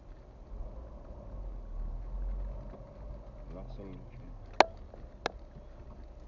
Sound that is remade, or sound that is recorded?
recorded